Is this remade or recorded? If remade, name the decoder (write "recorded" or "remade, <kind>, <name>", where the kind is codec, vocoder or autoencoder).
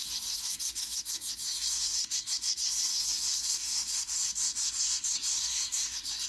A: remade, codec, SNAC